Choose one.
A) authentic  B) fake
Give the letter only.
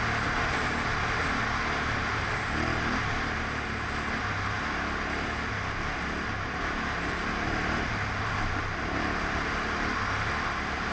A